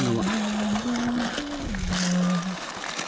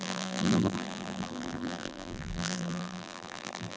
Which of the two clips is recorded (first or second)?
first